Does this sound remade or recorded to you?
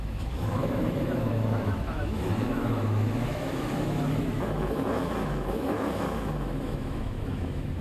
remade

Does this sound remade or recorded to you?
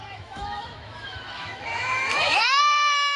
remade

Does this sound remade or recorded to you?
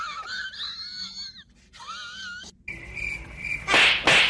recorded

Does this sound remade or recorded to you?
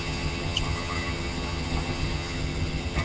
remade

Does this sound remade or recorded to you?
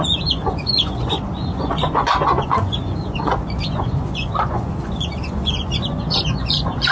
remade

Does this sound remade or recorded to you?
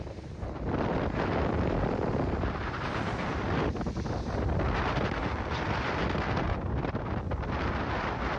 remade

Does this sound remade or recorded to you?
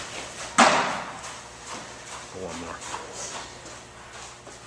recorded